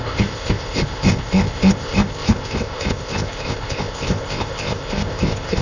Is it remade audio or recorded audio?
remade